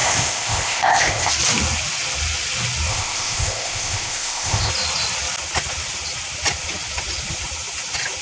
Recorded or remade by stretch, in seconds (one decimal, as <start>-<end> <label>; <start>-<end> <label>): 0.0-1.3 remade; 1.3-2.9 recorded; 2.9-4.7 remade; 4.7-8.2 recorded